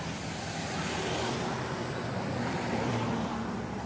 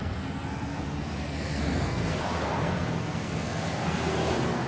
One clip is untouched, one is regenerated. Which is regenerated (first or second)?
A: second